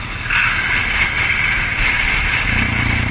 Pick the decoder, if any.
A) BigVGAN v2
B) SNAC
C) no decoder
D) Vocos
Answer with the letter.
A